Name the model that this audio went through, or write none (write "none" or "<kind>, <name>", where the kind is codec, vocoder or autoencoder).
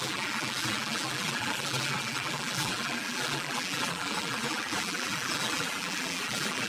vocoder, BigVGAN v2